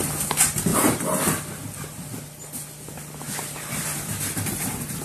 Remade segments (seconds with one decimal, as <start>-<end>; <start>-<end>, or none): none